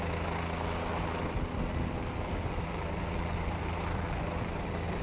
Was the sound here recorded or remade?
recorded